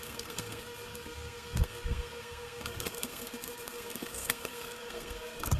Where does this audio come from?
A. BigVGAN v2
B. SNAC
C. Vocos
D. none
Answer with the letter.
B